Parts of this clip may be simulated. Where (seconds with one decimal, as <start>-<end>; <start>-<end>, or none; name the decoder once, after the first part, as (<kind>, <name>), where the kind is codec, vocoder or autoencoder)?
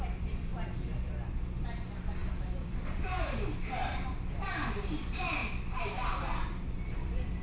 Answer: 0.0-7.4 (vocoder, BigVGAN v2)